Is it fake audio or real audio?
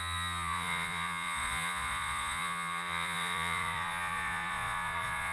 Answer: fake